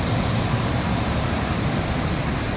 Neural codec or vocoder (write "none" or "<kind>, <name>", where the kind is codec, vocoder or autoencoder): vocoder, BigVGAN v2